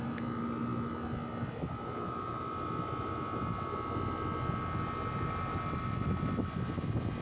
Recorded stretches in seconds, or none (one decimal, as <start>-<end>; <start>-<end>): 0.0-7.2